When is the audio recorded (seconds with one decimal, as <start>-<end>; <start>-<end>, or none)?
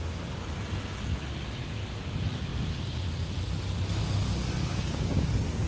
0.0-4.7; 5.3-5.7